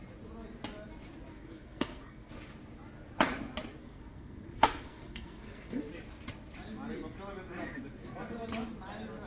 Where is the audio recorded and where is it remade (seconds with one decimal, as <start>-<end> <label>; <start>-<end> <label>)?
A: 0.0-1.3 recorded; 1.3-2.3 remade; 2.3-3.8 recorded; 3.8-5.8 remade; 5.8-9.3 recorded